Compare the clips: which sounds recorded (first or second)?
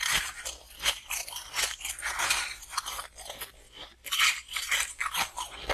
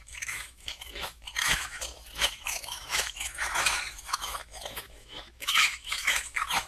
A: first